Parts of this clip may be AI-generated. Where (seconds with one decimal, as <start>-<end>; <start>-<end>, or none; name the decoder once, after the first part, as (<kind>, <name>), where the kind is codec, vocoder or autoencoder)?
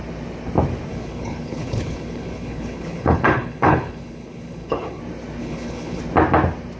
0.9-5.0 (codec, HILCodec); 5.4-6.0